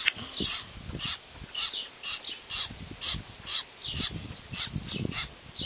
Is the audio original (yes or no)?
yes